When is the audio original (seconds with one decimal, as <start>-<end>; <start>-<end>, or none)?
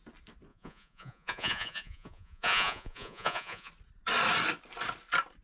0.0-0.5; 3.7-5.4